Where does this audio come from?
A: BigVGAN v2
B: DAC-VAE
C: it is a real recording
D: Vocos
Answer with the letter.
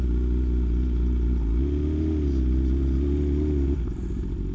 C